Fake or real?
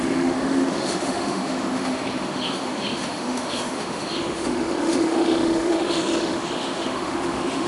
fake